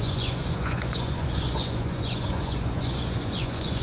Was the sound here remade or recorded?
remade